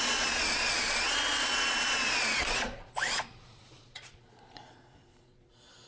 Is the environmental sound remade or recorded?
remade